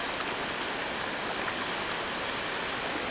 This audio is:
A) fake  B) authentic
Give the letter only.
B